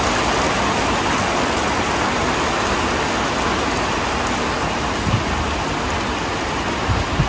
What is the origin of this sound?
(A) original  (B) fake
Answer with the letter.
A